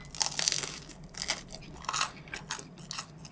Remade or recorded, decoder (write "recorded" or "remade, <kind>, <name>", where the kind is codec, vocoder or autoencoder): recorded